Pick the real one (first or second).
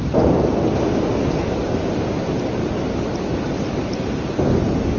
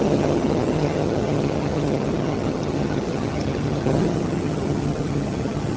first